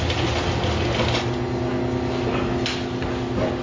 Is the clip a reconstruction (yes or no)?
no